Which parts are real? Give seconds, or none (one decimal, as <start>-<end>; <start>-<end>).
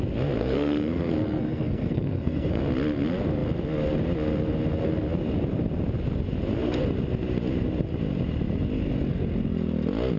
0.0-0.4; 2.6-10.2